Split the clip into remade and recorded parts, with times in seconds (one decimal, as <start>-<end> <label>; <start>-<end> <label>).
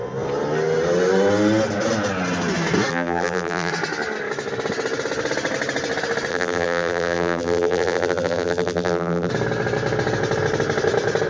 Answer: 0.0-2.9 recorded; 2.9-3.7 remade; 3.7-6.3 recorded; 6.3-9.3 remade; 9.3-11.3 recorded